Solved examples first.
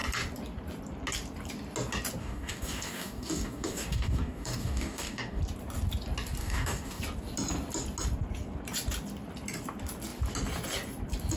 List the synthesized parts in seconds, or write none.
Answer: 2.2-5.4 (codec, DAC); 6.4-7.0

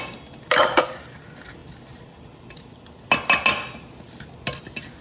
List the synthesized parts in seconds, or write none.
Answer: none

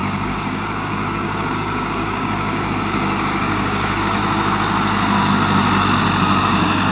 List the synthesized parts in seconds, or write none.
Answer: 0.0-4.2 (codec, DAC); 6.4-6.9

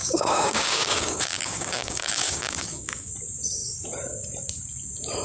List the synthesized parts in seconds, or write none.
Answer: 0.0-3.1 (codec, DAC)

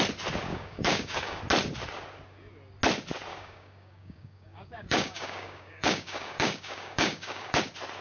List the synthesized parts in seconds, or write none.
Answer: 0.5-1.4 (codec, DAC); 3.3-7.6

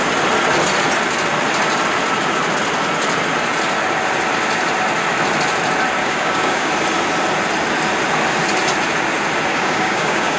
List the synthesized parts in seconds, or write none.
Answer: 6.0-6.7 (codec, DAC); 9.5-10.4

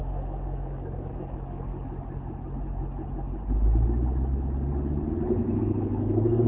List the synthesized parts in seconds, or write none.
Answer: 0.0-1.7 (codec, DAC); 5.6-6.5

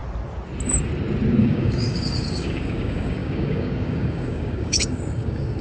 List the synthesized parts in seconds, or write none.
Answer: 1.4-5.6 (codec, DAC)